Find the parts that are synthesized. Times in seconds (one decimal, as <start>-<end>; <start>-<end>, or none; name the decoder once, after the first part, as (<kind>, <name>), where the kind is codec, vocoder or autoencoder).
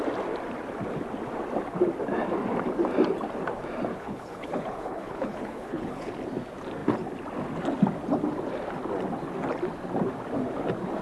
3.9-6.1 (codec, HILCodec)